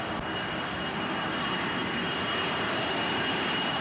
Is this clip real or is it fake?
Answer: real